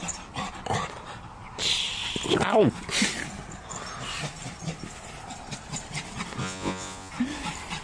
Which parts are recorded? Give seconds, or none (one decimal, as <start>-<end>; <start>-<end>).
0.0-6.4; 7.1-7.8